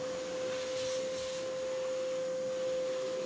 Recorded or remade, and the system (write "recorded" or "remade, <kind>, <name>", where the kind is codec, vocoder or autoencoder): recorded